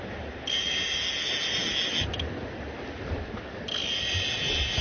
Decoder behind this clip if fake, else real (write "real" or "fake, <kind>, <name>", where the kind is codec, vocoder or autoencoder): real